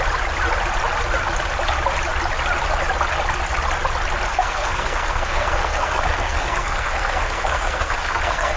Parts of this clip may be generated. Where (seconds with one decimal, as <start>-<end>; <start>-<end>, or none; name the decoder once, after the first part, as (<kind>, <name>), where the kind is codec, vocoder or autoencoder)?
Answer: 4.3-8.6 (codec, SNAC)